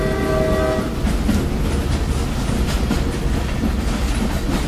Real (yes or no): yes